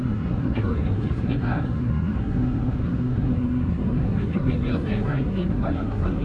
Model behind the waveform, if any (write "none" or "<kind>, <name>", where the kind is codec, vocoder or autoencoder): codec, SNAC